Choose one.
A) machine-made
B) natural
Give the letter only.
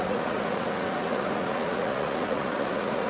A